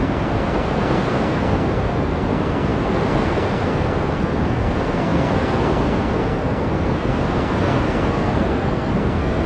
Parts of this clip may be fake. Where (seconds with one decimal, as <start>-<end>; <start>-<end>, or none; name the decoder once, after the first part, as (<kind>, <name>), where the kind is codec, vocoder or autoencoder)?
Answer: 0.0-9.5 (codec, SNAC)